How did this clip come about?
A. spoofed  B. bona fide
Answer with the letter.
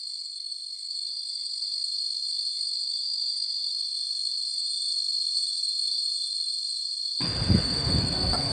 A